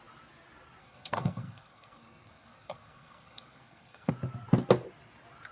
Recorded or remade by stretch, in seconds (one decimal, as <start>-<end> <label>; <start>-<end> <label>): 0.0-0.8 recorded; 0.8-4.1 remade; 4.1-5.5 recorded